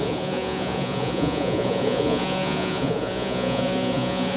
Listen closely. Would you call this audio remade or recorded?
remade